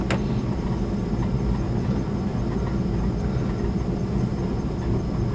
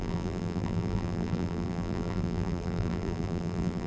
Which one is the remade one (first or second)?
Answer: second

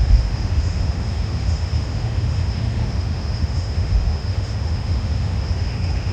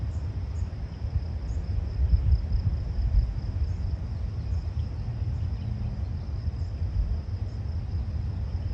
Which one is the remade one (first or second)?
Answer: first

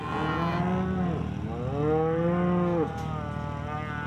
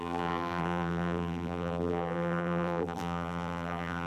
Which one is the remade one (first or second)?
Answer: second